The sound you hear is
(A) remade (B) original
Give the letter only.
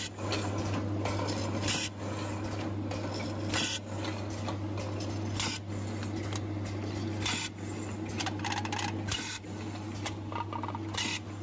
B